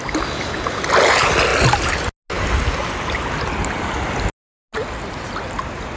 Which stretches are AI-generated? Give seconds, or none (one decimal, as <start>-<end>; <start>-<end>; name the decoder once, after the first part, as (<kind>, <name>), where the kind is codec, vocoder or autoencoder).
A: none